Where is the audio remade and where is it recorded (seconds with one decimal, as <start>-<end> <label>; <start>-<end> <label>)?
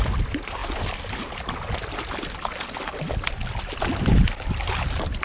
0.0-5.2 recorded